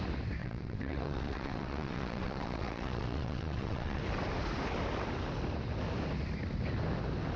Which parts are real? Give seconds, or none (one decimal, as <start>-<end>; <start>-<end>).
0.0-0.4; 4.0-7.4